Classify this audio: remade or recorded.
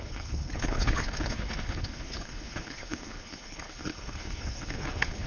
remade